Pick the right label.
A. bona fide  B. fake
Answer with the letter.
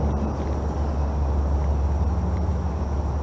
A